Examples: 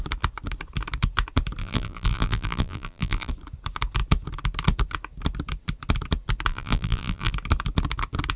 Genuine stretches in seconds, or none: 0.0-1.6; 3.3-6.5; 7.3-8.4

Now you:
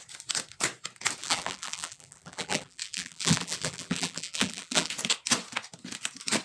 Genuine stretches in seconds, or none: 0.0-1.2; 4.9-6.4

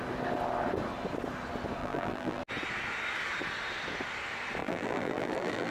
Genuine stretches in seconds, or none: 0.0-1.8; 2.4-4.6

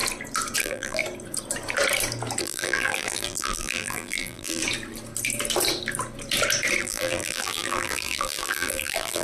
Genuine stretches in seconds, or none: 0.0-0.6; 1.0-2.4; 4.6-6.8

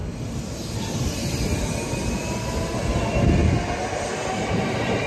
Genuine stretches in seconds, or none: 0.0-5.1